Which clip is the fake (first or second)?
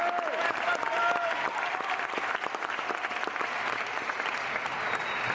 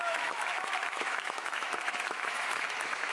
second